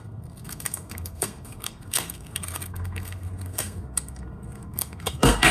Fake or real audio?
fake